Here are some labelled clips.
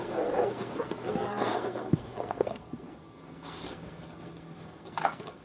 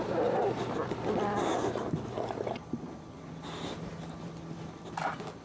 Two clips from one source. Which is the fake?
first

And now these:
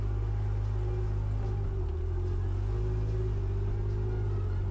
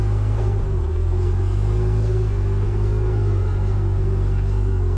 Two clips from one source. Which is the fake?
second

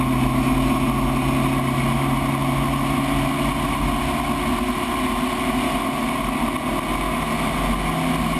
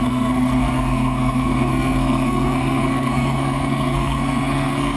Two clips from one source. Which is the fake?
second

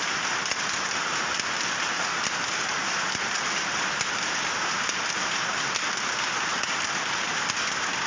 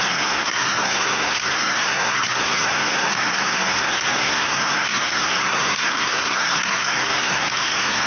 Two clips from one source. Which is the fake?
second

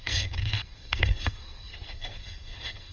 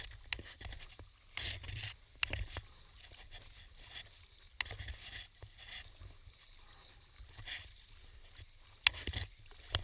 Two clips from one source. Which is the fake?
first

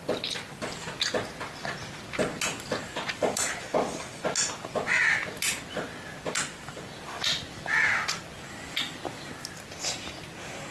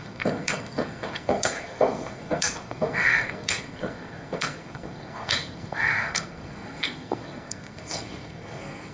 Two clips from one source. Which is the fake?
second